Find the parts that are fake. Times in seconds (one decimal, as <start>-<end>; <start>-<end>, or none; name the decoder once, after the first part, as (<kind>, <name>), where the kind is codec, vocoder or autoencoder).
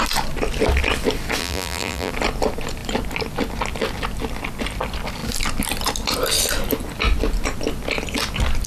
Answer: 1.4-2.1 (vocoder, BigVGAN v2)